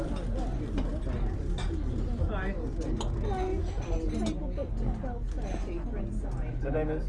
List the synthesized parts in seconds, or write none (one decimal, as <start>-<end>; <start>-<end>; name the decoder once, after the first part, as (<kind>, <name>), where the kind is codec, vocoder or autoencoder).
none